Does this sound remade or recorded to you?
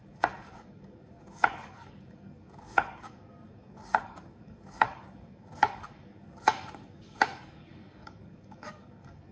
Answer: remade